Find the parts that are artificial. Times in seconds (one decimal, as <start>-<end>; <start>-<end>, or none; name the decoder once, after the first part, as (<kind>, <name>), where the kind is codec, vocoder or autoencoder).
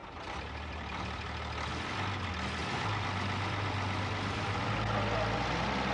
0.0-1.7 (vocoder, BigVGAN v2); 2.6-4.6